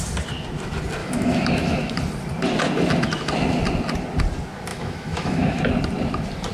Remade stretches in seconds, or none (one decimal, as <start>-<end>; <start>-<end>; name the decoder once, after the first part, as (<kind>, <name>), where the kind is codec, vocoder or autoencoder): 1.0-1.9 (autoencoder, DAC-VAE); 4.7-5.6